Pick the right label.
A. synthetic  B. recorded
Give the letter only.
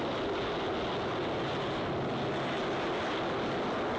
B